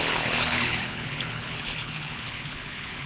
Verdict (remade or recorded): remade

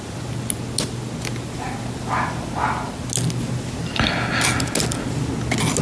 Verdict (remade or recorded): recorded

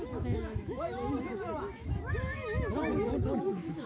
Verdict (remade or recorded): remade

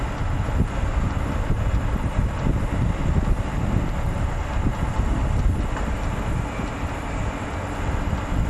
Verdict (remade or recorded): recorded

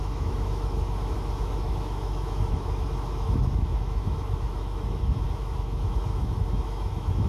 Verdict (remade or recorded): remade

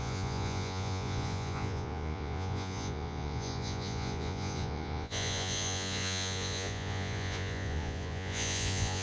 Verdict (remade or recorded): remade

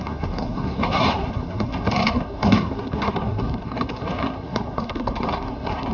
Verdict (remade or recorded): remade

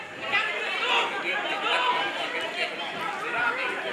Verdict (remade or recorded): recorded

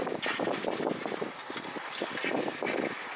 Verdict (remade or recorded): recorded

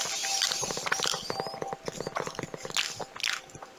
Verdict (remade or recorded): recorded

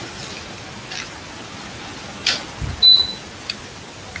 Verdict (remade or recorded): recorded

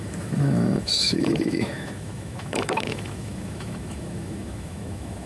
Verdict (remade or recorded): remade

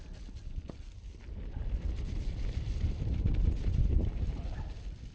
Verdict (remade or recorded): recorded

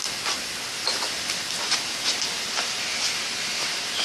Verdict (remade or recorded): recorded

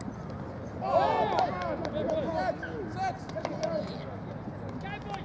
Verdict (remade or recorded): recorded